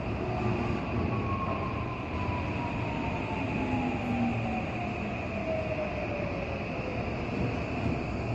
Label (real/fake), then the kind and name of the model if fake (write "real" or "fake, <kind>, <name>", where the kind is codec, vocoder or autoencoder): real